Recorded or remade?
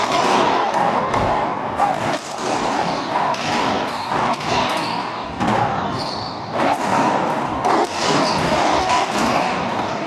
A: remade